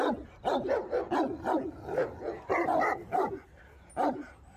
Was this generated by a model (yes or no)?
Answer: no